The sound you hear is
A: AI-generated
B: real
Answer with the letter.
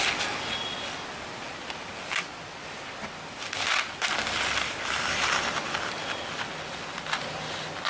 B